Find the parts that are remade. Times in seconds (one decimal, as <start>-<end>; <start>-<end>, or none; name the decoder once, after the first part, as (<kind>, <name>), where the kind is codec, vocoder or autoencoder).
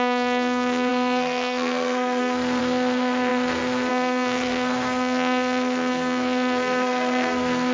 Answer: 0.0-7.7 (codec, SNAC)